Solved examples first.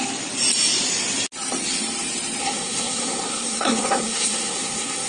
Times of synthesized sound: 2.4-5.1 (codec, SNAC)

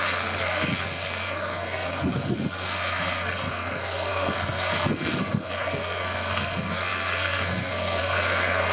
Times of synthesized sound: 0.0-8.7 (codec, SNAC)

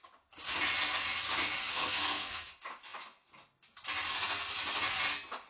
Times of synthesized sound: 1.7-2.5 (codec, SNAC)